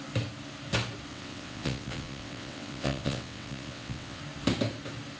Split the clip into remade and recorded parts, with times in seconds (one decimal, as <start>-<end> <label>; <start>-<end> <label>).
0.0-1.1 recorded; 1.1-4.2 remade; 4.2-5.2 recorded